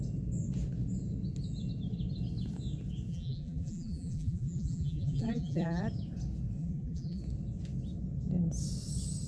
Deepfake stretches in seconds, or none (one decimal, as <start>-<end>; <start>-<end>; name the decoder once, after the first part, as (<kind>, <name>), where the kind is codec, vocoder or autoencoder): 3.1-5.8 (vocoder, BigVGAN v2); 6.6-7.2